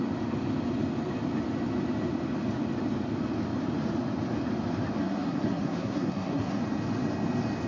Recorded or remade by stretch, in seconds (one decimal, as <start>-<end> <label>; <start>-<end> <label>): 0.0-5.0 recorded; 5.0-6.6 remade; 6.6-7.7 recorded